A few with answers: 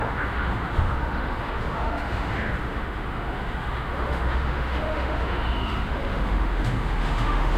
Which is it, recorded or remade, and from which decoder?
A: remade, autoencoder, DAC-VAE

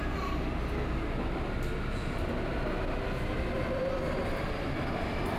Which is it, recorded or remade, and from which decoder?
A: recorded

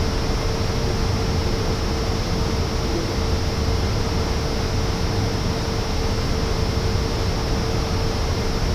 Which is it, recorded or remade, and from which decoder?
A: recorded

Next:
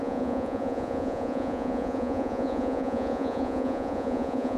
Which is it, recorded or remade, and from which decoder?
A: remade, vocoder, Vocos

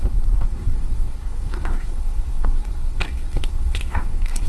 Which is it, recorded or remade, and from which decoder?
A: remade, codec, SNAC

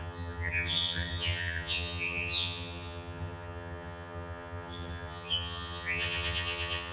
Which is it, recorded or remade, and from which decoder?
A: remade, vocoder, HiFi-GAN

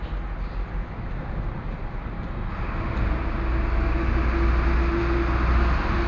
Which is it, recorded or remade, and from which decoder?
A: recorded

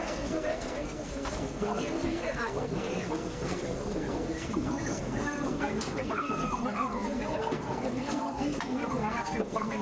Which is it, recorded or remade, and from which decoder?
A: remade, codec, SNAC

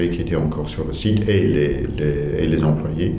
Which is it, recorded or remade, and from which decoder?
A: recorded